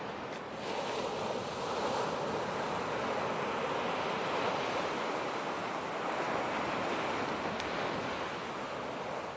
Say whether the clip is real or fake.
real